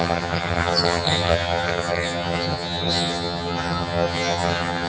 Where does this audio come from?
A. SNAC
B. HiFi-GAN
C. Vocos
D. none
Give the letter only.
B